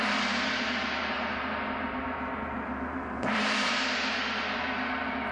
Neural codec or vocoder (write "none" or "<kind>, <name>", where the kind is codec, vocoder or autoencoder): vocoder, BigVGAN v2